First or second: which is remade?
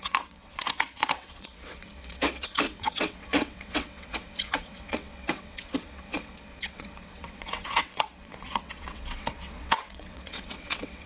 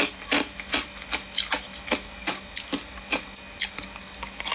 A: first